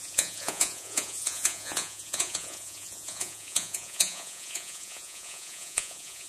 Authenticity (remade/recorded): remade